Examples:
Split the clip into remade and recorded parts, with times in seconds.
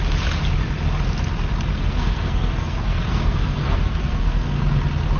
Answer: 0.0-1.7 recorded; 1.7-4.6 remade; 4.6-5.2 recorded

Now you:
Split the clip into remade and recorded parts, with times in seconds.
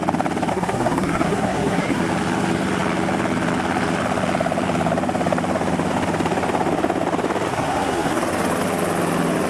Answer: 0.0-0.5 recorded; 0.5-2.0 remade; 2.0-7.5 recorded; 7.5-8.2 remade; 8.2-9.5 recorded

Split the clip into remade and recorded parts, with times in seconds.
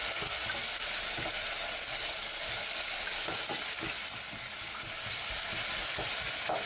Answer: 0.0-6.7 recorded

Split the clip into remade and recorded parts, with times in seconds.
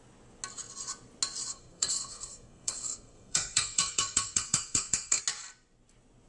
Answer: 0.0-1.5 recorded; 1.5-5.2 remade; 5.2-6.3 recorded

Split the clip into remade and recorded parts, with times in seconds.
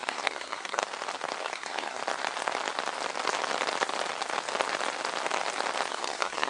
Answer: 0.0-0.8 remade; 0.8-1.4 recorded; 1.4-2.0 remade; 2.0-5.9 recorded; 5.9-6.5 remade